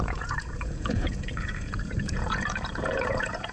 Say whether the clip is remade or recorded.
remade